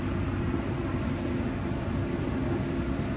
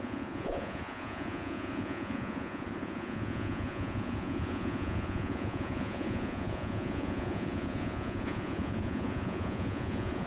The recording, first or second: first